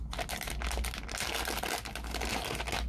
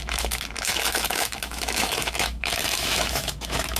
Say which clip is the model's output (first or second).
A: second